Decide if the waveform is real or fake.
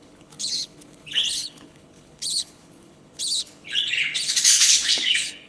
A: fake